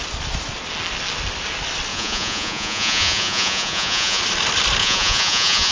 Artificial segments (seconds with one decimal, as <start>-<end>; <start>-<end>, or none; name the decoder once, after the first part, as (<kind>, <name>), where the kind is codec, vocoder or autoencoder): 1.9-4.2 (vocoder, Vocos); 4.8-5.7